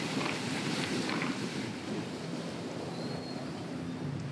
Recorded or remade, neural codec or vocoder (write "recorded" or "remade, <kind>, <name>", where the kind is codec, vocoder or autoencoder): recorded